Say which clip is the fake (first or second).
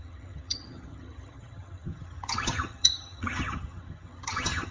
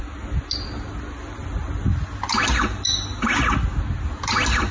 first